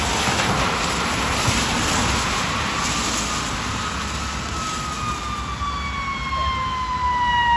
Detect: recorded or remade recorded